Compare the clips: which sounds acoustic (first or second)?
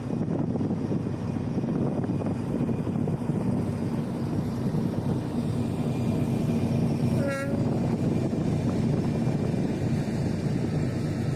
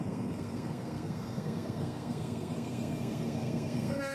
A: first